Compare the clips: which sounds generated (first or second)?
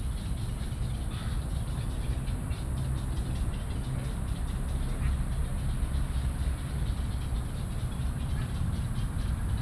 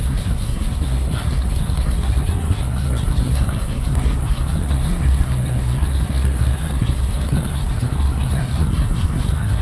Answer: second